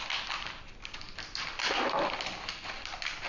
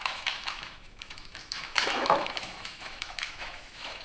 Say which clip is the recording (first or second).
first